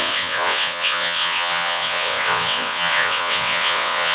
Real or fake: fake